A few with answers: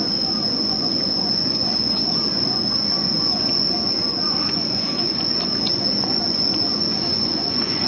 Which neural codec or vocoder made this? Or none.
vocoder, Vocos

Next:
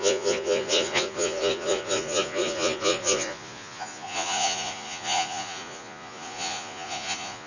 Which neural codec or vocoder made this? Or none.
vocoder, Vocos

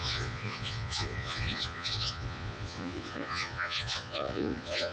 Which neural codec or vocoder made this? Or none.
vocoder, Vocos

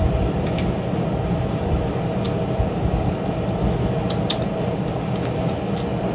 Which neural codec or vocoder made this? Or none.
none